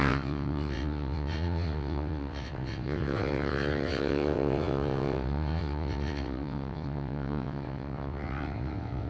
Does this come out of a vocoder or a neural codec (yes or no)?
yes